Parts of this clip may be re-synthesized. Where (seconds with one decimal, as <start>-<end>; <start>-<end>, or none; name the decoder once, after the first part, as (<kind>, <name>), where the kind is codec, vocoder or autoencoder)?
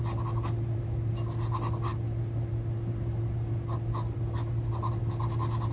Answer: none